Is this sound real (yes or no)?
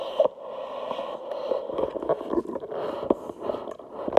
yes